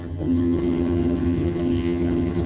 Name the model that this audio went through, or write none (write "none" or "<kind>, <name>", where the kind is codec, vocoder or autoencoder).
vocoder, HiFi-GAN